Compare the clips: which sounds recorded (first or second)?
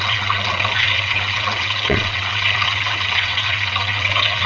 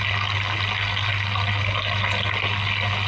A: second